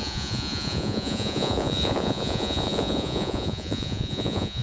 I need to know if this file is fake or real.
fake